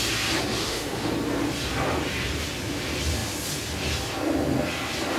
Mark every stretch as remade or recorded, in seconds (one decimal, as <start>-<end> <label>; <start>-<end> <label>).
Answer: 0.0-0.6 recorded; 0.6-1.1 remade; 1.1-5.2 recorded